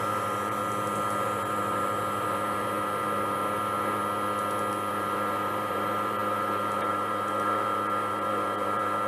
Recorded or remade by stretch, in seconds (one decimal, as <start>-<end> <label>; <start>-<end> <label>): 0.0-0.6 remade; 0.6-1.2 recorded; 1.2-4.0 remade; 4.0-4.9 recorded; 4.9-9.1 remade